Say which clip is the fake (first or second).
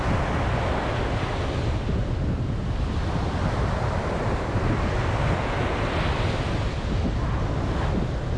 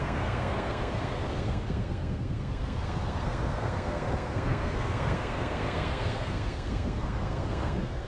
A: second